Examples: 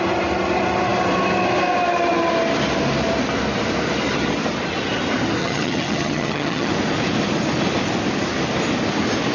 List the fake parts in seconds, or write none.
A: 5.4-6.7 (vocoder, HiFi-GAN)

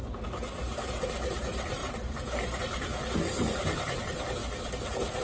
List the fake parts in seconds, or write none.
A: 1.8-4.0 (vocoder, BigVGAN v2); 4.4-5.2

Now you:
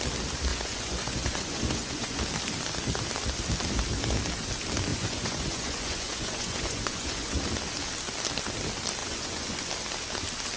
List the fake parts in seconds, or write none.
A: 0.5-2.2 (vocoder, Vocos); 4.9-7.4; 9.0-9.7

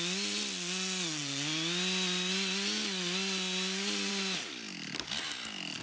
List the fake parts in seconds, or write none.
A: none

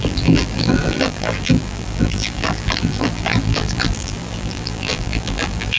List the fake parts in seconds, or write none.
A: 0.0-5.8 (vocoder, BigVGAN v2)